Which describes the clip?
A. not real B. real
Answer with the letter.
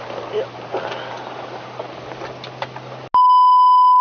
B